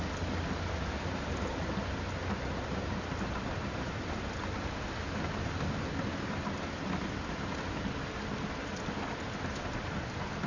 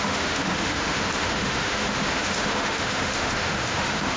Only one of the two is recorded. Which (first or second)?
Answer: first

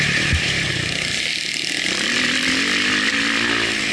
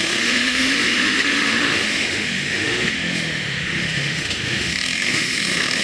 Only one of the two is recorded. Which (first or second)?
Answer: first